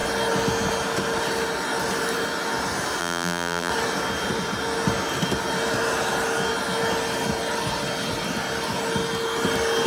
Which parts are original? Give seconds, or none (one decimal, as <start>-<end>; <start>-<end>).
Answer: 0.0-3.0; 3.7-9.9